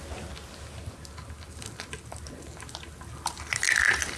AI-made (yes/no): no